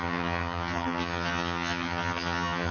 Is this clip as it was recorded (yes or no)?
no